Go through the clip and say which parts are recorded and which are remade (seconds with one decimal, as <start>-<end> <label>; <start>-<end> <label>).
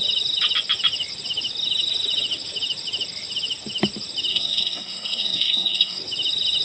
0.0-4.3 recorded; 4.3-6.0 remade; 6.0-6.6 recorded